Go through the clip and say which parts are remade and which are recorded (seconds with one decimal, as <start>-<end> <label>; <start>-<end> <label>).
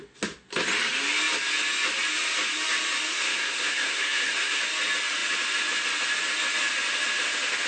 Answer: 0.0-3.1 recorded; 3.1-4.6 remade; 4.6-7.7 recorded